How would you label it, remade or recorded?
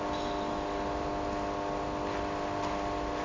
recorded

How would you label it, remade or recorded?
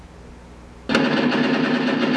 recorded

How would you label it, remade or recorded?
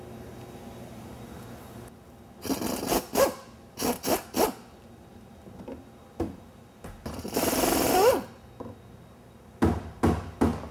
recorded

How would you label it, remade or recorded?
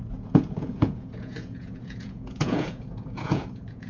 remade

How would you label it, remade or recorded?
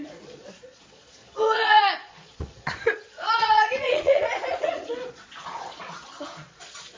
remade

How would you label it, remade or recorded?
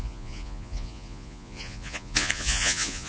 remade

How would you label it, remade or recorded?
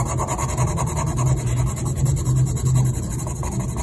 recorded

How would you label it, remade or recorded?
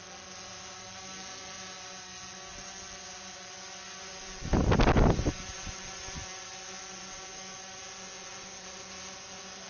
recorded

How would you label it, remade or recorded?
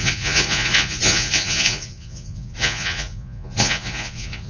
remade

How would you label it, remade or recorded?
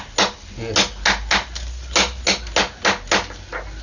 recorded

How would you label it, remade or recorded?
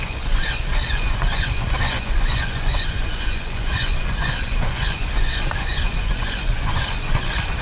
remade